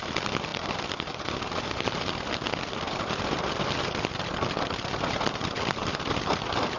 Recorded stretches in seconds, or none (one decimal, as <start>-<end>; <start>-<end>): 0.0-5.8